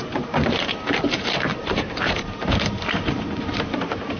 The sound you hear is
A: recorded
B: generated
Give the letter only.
B